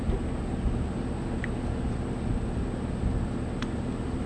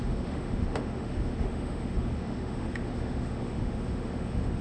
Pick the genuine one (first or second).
first